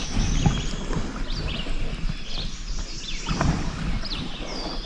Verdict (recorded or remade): recorded